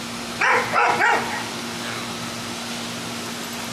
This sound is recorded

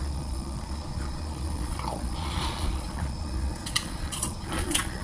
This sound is remade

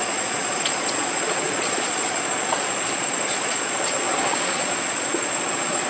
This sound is remade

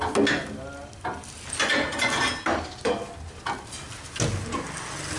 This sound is recorded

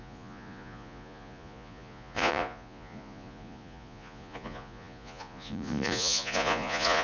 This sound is remade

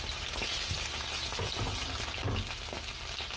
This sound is recorded